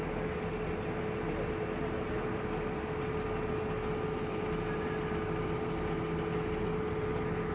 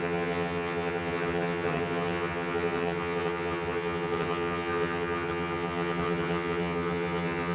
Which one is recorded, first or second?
first